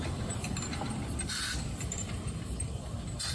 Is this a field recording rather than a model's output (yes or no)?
no